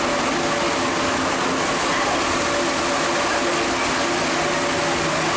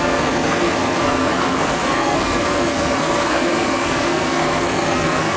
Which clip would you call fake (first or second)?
second